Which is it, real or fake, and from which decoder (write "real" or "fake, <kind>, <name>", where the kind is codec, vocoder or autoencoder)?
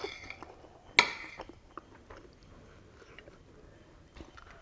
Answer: real